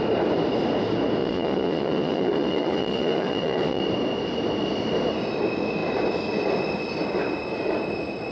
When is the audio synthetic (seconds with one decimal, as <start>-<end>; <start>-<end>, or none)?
1.2-3.8